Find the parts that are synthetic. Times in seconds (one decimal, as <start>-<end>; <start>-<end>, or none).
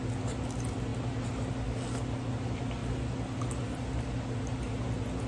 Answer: none